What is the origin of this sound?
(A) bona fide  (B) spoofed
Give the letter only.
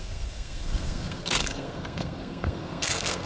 B